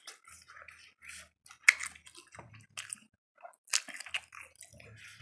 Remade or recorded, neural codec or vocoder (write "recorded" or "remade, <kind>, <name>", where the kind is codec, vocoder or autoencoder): recorded